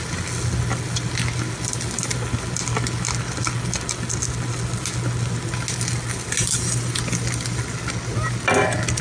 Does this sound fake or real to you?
real